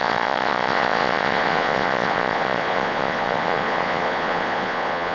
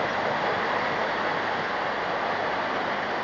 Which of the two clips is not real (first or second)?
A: first